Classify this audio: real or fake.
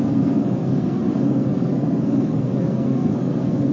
fake